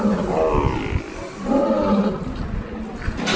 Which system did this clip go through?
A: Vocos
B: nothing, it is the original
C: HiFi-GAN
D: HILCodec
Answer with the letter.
B